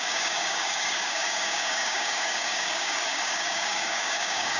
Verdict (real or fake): fake